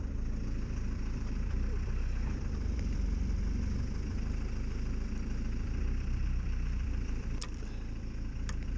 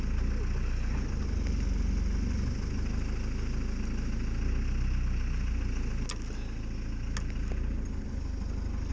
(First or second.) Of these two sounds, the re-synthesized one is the first